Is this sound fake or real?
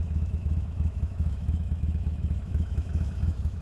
fake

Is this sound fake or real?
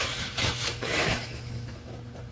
fake